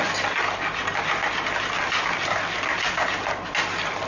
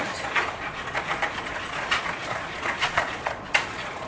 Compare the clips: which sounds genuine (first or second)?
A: first